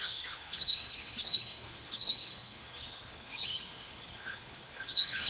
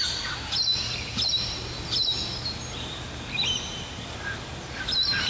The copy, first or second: first